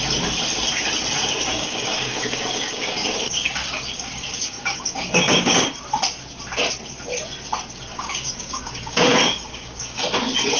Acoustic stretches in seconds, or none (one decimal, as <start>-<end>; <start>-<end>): 0.0-1.5; 5.8-7.9; 10.0-10.6

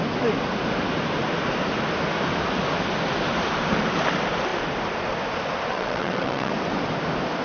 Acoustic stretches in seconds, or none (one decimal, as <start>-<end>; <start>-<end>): 0.0-5.7; 6.5-7.4

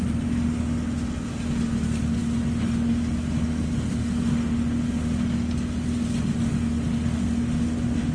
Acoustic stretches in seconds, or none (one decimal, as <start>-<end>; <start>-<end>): 0.0-8.1

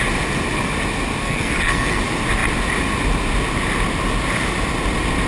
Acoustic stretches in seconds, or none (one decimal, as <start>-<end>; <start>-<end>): 0.0-1.2; 2.0-5.3

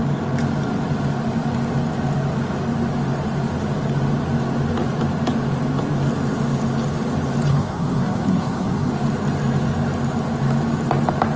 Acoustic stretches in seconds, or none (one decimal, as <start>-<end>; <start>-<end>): 0.0-7.5; 8.9-11.4

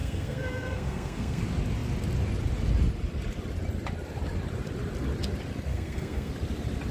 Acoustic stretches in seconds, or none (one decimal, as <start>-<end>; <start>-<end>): 1.4-5.7; 6.3-6.9

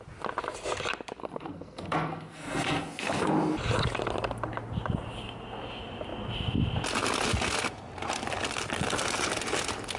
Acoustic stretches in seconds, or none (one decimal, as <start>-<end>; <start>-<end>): 0.0-1.2; 3.3-10.0